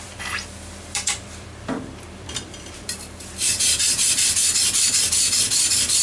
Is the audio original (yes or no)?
no